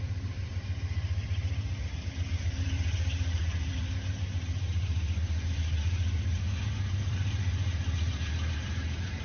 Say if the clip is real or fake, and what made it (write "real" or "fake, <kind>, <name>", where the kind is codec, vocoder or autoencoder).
fake, vocoder, BigVGAN v2